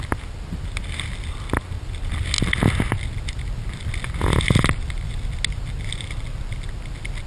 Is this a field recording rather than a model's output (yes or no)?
yes